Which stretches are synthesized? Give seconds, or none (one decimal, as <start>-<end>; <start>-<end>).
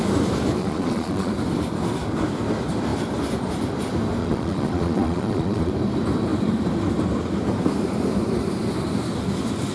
0.6-1.3; 4.2-5.7